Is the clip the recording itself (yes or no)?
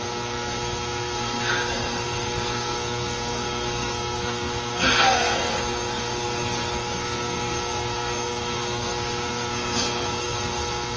no